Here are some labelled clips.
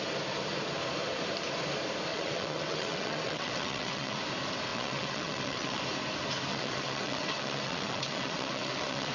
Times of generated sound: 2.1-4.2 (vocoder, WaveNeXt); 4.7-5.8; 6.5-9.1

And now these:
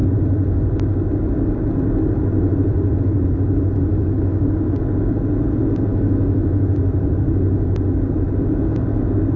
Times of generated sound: 3.9-4.7 (autoencoder, DAC-VAE); 5.9-6.7